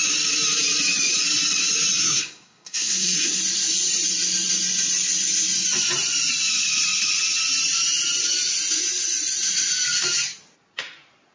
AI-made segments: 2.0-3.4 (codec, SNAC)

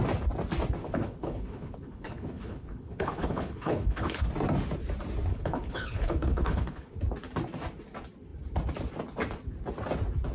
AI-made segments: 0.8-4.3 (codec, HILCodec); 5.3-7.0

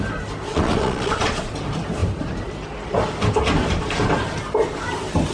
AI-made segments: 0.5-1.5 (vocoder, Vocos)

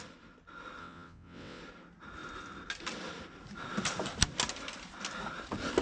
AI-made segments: 0.8-1.6 (vocoder, WaveNeXt)

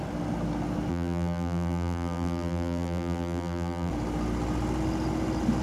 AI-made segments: 0.9-3.9 (vocoder, BigVGAN v2)